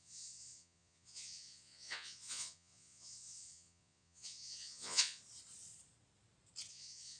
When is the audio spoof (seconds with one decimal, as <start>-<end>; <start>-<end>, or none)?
0.0-5.2; 6.7-7.2